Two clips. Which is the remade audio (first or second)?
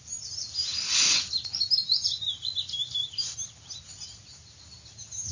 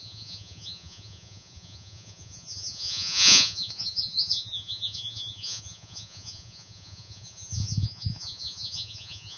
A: second